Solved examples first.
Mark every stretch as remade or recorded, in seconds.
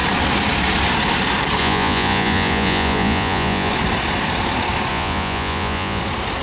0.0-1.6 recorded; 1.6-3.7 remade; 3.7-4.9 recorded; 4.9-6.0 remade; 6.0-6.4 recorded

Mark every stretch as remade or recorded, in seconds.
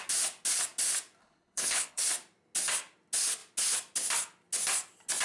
0.0-1.2 recorded; 1.2-2.0 remade; 2.0-5.2 recorded